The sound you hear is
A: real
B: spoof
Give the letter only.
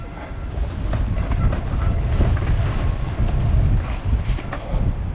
A